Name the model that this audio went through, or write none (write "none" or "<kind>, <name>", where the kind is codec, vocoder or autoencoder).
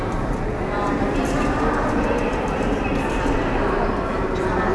none